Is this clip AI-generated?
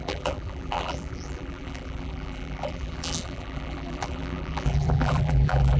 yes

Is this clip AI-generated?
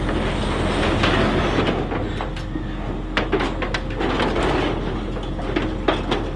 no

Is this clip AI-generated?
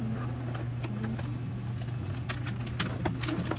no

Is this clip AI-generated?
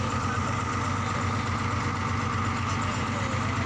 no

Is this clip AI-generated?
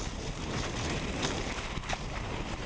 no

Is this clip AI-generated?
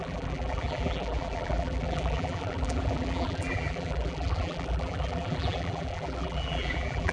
yes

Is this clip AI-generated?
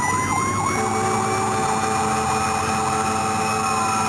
no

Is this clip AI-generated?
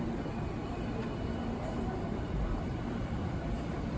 yes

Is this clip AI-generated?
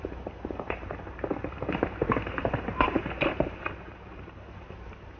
yes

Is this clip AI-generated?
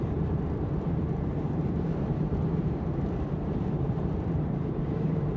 yes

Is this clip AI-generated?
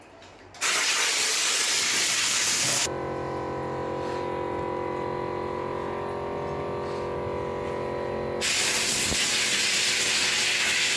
no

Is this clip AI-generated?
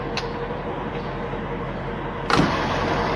no